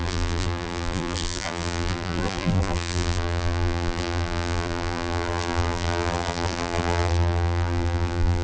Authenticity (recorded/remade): remade